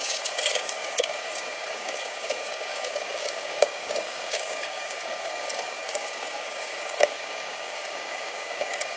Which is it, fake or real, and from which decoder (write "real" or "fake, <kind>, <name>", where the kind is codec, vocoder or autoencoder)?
fake, codec, DAC